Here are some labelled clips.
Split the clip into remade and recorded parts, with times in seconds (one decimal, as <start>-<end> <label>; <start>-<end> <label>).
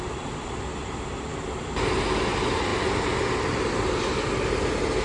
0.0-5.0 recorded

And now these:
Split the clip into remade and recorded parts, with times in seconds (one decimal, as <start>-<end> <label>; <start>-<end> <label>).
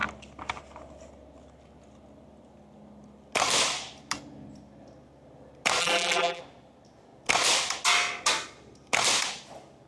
0.0-5.8 recorded; 5.8-6.4 remade; 6.4-9.9 recorded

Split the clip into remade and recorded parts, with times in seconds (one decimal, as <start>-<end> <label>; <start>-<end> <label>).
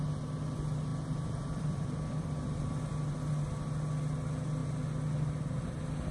0.0-0.9 recorded; 0.9-2.7 remade; 2.7-6.1 recorded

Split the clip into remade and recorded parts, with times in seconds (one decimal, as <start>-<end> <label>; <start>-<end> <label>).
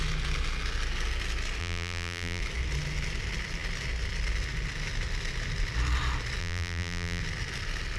0.0-1.6 recorded; 1.6-2.4 remade; 2.4-6.4 recorded; 6.4-7.2 remade; 7.2-8.0 recorded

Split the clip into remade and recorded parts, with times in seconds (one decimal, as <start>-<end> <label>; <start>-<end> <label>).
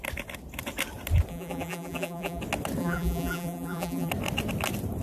0.0-1.3 recorded; 1.3-2.4 remade; 2.4-2.8 recorded; 2.8-4.1 remade; 4.1-5.0 recorded